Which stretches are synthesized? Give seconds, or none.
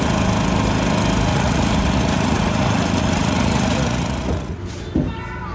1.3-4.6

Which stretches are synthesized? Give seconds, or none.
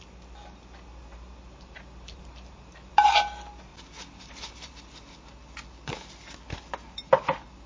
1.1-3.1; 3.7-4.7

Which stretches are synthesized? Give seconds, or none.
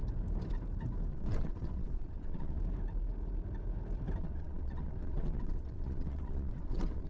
1.1-2.6; 4.2-7.1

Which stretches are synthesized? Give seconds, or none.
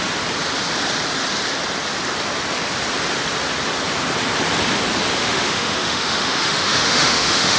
5.2-7.6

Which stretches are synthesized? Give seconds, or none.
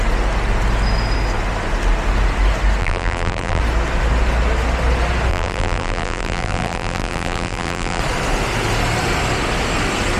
2.8-3.6; 5.3-8.0